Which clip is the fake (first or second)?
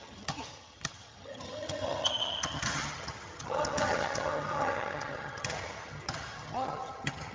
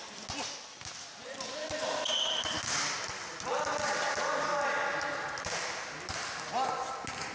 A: first